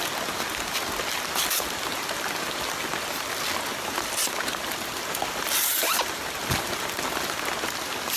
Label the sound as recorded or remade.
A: recorded